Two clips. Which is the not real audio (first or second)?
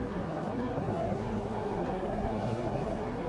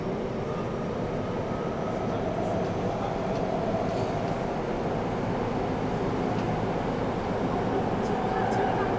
first